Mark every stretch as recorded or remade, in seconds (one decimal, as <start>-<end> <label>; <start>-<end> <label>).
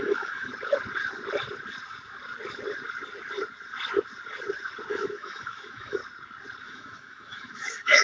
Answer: 0.0-0.5 remade; 0.5-4.9 recorded; 4.9-6.0 remade; 6.0-6.6 recorded; 6.6-8.0 remade